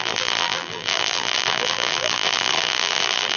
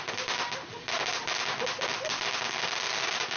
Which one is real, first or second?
second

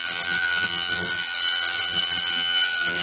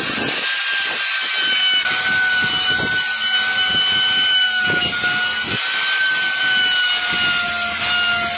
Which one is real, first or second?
second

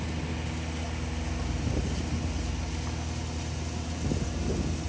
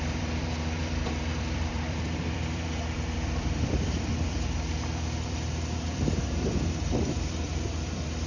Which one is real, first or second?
first